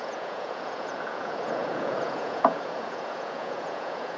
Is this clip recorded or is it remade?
remade